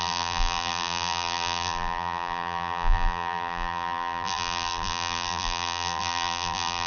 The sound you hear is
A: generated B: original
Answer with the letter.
A